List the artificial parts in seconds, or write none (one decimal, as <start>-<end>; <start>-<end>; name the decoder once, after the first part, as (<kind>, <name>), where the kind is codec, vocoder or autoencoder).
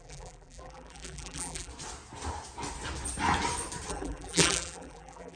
0.0-1.7 (vocoder, BigVGAN v2); 3.9-5.4